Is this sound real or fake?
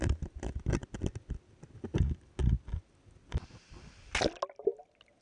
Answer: real